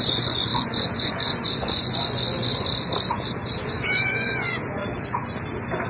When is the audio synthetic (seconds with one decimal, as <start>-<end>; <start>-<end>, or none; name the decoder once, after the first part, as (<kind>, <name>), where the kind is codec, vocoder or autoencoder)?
0.0-2.7 (vocoder, Vocos); 3.6-4.8

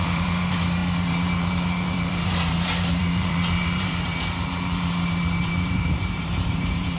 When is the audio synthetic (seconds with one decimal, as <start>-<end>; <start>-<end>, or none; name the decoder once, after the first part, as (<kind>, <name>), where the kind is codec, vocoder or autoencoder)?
0.0-7.0 (vocoder, BigVGAN v2)

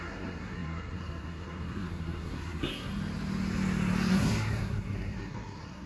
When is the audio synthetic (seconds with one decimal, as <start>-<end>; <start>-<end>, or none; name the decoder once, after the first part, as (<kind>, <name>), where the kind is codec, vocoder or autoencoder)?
0.0-2.9 (codec, SNAC); 4.1-5.9

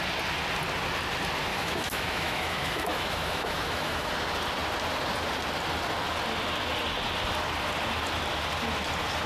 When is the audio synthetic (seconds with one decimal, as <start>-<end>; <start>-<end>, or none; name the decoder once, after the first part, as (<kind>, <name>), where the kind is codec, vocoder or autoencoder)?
1.5-4.1 (autoencoder, DAC-VAE)

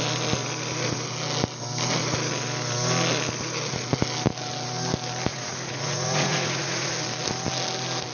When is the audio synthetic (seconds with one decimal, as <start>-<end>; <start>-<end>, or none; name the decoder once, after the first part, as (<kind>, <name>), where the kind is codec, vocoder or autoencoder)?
5.3-6.9 (vocoder, Vocos)

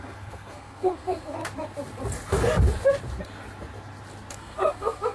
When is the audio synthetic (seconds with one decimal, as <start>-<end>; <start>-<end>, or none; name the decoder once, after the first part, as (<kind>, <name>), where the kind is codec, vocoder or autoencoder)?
0.0-1.4 (codec, SNAC); 4.3-5.1